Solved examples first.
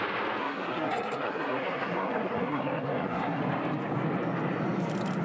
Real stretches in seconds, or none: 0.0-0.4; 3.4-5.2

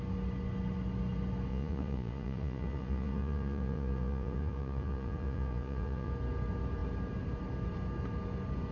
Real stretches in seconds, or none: 0.0-1.5; 6.1-8.7

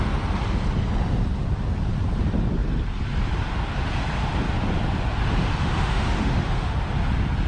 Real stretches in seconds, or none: 0.0-5.4; 6.9-7.5

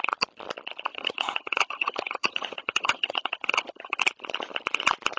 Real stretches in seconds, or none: 0.0-0.9; 4.0-5.2

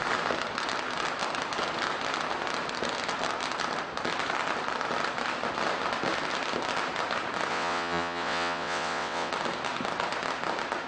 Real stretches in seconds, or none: 0.0-7.5; 9.3-10.9